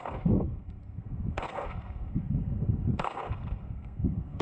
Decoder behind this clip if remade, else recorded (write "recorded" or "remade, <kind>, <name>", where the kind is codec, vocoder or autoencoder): remade, codec, SNAC